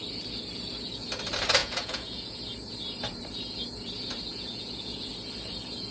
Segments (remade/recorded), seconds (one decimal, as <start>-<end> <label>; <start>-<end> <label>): 0.0-1.6 recorded; 1.6-2.4 remade; 2.4-4.3 recorded; 4.3-5.1 remade; 5.1-5.9 recorded